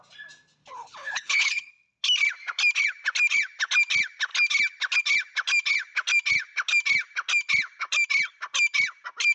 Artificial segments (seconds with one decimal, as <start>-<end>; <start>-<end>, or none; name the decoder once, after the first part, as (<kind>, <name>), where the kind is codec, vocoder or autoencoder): 0.6-1.7 (codec, HILCodec)